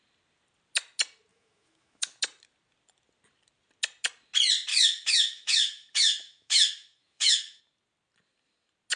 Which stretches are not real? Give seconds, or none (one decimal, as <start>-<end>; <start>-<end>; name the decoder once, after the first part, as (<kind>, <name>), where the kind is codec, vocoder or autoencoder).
1.3-2.2 (autoencoder, DAC-VAE); 4.7-7.6